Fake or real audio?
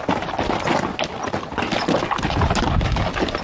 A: real